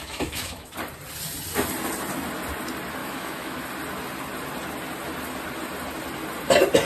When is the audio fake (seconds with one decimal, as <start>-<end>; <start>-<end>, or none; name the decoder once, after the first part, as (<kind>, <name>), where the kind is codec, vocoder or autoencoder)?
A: 0.0-0.7 (autoencoder, DAC-VAE); 3.0-3.6